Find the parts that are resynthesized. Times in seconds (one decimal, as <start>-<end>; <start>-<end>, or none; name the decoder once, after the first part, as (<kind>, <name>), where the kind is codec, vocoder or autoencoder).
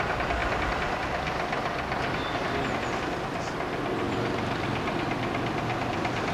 none